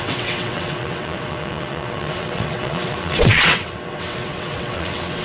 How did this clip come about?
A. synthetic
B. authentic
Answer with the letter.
A